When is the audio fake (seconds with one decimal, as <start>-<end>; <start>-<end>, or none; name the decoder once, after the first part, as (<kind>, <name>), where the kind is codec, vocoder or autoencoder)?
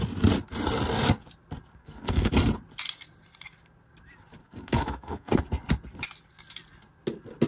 1.8-2.3 (codec, SNAC); 4.4-5.4